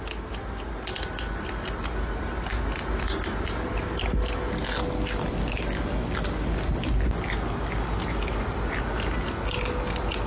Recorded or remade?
recorded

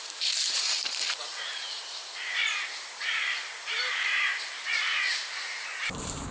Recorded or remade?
remade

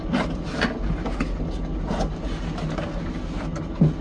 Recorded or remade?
recorded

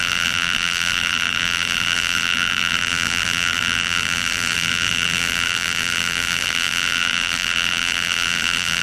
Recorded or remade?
remade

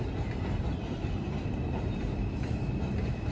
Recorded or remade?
remade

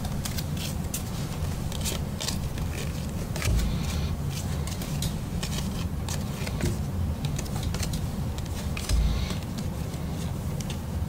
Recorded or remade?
recorded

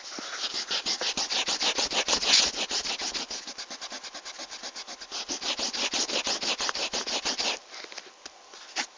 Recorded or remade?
recorded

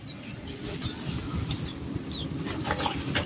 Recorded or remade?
remade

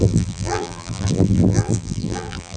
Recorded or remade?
remade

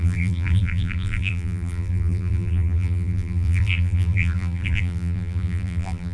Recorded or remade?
remade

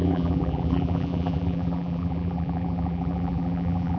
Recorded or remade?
remade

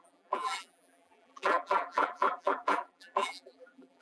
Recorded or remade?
remade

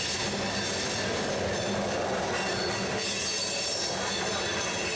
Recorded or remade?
recorded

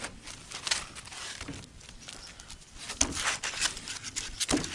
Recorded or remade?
remade